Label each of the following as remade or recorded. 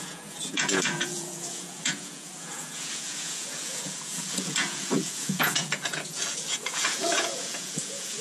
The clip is remade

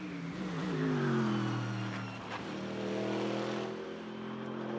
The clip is recorded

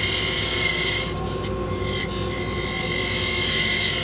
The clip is recorded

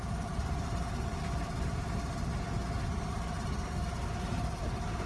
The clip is recorded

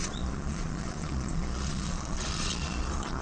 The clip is remade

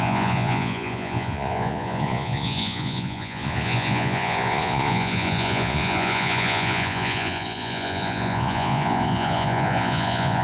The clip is remade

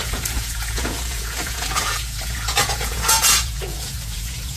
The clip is remade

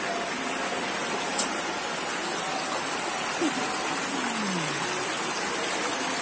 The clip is recorded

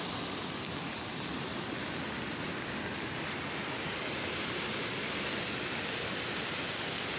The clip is recorded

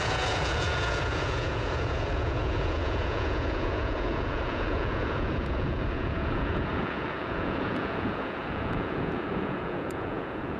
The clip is remade